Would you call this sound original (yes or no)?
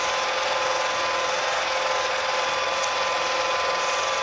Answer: yes